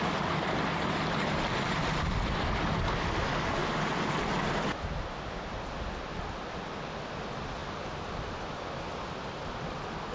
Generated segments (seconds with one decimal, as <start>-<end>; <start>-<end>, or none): none